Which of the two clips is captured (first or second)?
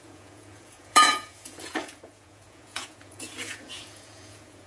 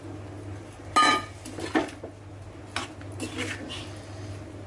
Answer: second